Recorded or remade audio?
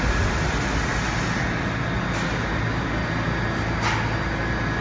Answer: recorded